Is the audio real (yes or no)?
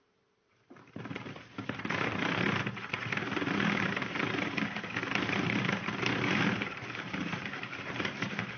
no